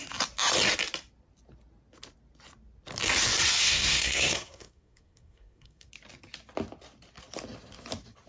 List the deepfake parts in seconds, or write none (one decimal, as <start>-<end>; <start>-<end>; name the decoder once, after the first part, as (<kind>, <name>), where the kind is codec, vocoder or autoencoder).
3.6-5.9 (codec, SNAC)